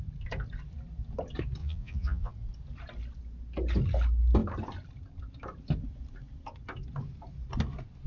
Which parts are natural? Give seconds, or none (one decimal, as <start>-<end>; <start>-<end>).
0.0-1.6; 2.3-8.1